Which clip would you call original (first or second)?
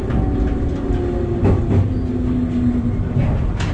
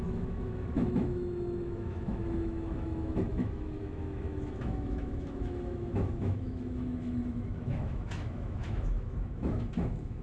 first